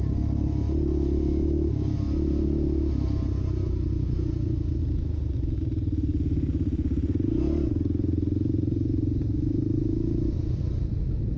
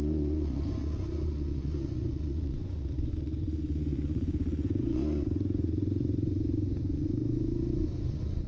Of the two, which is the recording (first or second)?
first